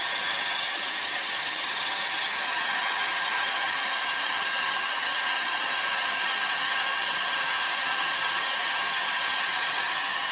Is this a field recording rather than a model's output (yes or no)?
no